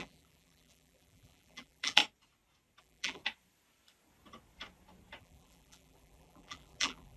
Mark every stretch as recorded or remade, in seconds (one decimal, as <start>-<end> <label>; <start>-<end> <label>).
0.0-2.0 remade; 2.0-2.8 recorded; 2.8-3.2 remade; 3.2-5.2 recorded; 5.2-7.2 remade